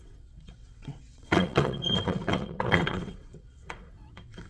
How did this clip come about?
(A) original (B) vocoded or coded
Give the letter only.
B